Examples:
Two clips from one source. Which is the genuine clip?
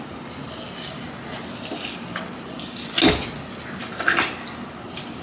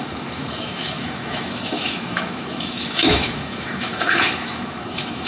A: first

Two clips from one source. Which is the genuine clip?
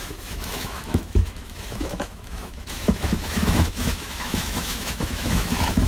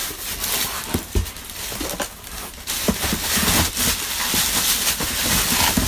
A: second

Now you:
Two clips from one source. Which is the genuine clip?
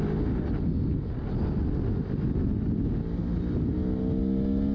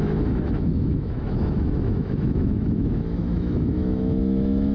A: first